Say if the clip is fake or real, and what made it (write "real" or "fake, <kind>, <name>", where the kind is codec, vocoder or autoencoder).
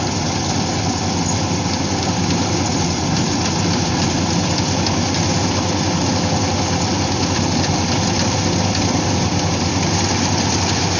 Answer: real